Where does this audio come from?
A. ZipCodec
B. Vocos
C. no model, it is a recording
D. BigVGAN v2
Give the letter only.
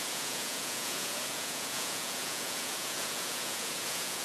B